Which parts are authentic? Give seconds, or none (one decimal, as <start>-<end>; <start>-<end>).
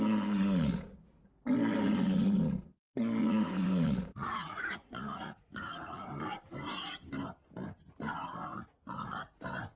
0.0-3.2; 6.1-8.5; 9.4-9.8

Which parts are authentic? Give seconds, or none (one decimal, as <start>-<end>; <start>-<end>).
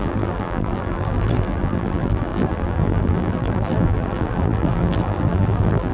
none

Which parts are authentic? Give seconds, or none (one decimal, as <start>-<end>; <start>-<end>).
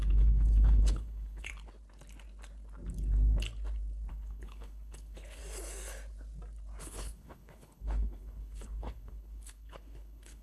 1.5-4.1; 5.4-6.8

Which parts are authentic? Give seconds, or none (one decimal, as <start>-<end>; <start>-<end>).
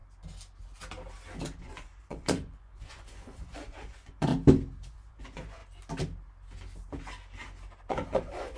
0.0-1.6; 4.3-4.9; 5.6-7.9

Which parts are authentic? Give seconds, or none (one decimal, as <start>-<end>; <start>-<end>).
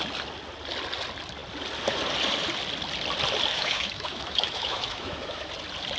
0.0-3.5; 5.5-6.0